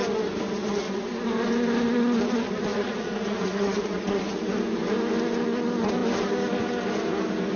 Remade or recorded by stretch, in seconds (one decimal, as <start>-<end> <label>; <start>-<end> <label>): 0.0-2.7 recorded; 2.7-4.3 remade; 4.3-7.6 recorded